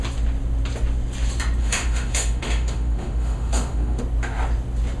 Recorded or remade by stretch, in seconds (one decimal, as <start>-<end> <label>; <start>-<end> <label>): 0.0-1.6 recorded; 1.6-4.0 remade; 4.0-5.0 recorded